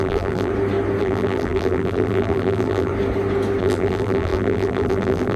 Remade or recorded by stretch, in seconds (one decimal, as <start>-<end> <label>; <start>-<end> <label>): 0.0-0.5 remade; 0.5-1.0 recorded; 1.0-2.9 remade; 2.9-3.6 recorded; 3.6-5.4 remade

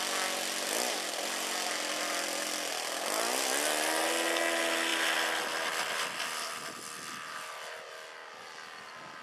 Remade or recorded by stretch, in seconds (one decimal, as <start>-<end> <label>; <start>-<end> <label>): 0.0-9.2 recorded

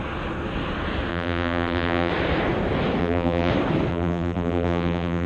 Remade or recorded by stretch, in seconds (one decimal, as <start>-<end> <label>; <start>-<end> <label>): 0.0-1.1 recorded; 1.1-2.1 remade; 2.1-3.0 recorded; 3.0-3.5 remade; 3.5-3.9 recorded; 3.9-5.3 remade

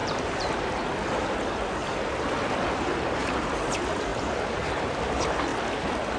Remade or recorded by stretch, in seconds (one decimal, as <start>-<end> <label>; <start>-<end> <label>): 0.0-0.6 remade; 0.6-6.2 recorded

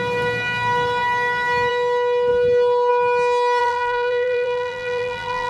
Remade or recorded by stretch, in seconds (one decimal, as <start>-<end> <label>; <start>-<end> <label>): 0.0-3.6 recorded; 3.6-5.5 remade

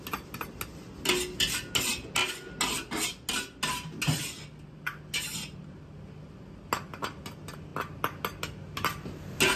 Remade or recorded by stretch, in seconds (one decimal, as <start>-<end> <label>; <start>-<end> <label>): 0.0-9.6 recorded